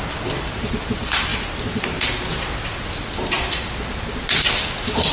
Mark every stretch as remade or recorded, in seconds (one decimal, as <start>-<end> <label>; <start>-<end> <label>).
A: 0.0-5.1 recorded